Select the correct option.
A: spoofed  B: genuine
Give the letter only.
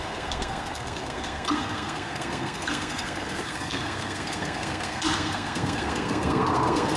A